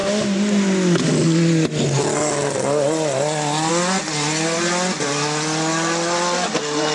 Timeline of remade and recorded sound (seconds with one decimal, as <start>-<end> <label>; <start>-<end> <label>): 0.0-6.9 recorded